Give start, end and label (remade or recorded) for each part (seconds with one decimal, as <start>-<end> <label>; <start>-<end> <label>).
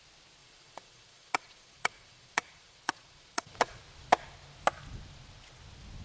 0.0-0.4 recorded; 0.4-3.8 remade; 3.8-6.0 recorded